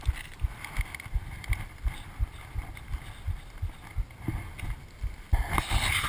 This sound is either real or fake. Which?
real